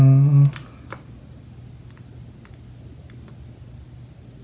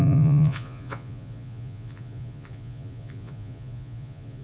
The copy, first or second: second